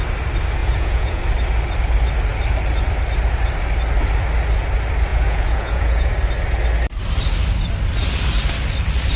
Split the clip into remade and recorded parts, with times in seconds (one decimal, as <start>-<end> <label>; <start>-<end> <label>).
0.0-0.6 recorded; 0.6-1.2 remade; 1.2-5.1 recorded; 5.1-6.1 remade; 6.1-9.2 recorded